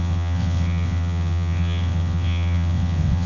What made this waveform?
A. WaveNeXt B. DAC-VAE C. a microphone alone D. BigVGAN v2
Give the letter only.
A